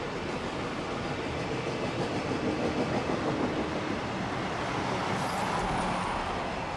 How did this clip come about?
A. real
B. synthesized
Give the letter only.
A